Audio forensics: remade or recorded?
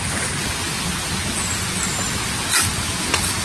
recorded